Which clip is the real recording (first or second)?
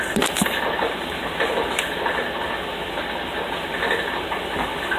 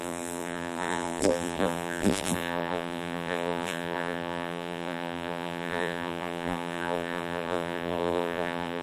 first